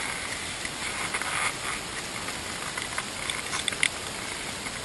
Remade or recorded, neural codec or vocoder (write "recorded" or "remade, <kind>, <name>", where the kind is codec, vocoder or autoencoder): recorded